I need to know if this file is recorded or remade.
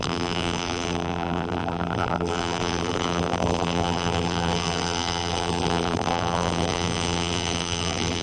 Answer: remade